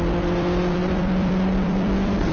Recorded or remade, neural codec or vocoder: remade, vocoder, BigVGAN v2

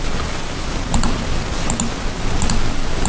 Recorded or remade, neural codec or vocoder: recorded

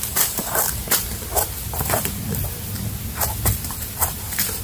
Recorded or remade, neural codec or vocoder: remade, vocoder, BigVGAN v2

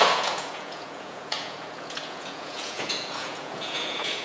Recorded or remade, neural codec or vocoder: remade, vocoder, Vocos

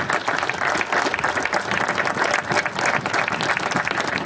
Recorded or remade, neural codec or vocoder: recorded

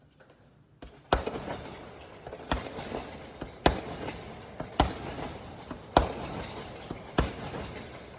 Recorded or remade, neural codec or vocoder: recorded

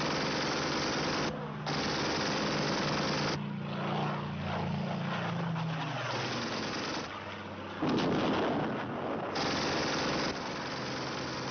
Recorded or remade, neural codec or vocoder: recorded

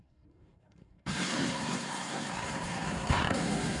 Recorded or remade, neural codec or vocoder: remade, codec, SNAC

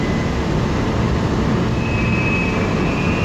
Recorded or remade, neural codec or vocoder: recorded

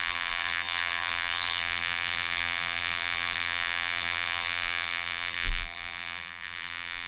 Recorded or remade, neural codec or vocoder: remade, vocoder, BigVGAN v2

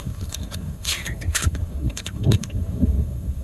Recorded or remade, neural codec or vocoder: remade, codec, SNAC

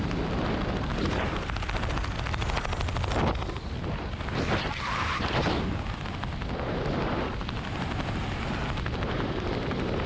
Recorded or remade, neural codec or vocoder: recorded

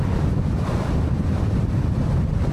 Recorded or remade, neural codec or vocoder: recorded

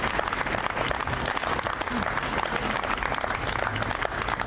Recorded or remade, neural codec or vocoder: recorded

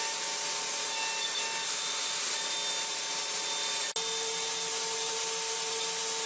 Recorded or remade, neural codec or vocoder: recorded